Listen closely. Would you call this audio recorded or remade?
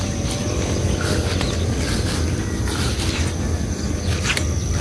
recorded